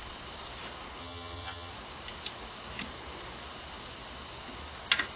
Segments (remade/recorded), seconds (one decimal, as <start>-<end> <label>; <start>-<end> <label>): 0.0-1.0 recorded; 1.0-1.7 remade; 1.7-5.2 recorded